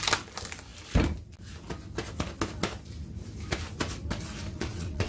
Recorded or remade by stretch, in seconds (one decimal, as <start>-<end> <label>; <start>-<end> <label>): 0.0-4.5 recorded; 4.5-5.1 remade